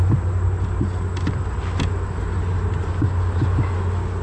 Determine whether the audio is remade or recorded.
recorded